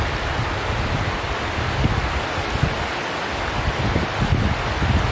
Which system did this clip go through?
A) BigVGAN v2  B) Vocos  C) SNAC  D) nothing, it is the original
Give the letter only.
D